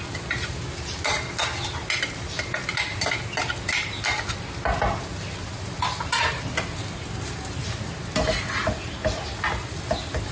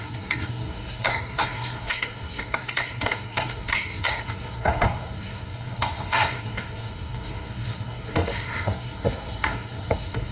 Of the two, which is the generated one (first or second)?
second